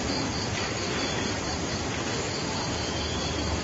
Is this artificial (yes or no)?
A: yes